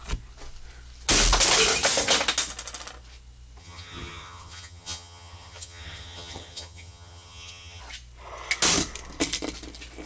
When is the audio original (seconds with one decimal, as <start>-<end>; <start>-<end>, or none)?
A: 0.0-3.6; 7.8-10.1